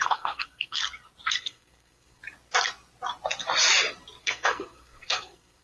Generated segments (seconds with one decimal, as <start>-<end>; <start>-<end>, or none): 0.0-0.8; 1.4-2.2; 4.2-5.6